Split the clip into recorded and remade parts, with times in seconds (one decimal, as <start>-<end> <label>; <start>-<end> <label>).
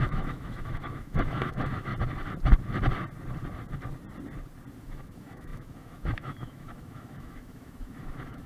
0.0-1.9 remade; 1.9-4.8 recorded; 4.8-8.5 remade